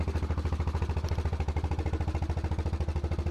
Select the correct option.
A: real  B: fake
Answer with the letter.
A